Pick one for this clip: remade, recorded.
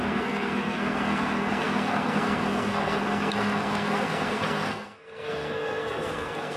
remade